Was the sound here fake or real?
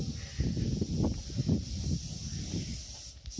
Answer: real